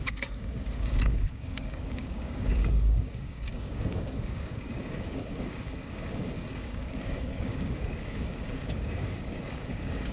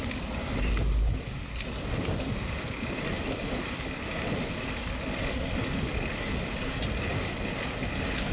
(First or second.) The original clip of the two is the second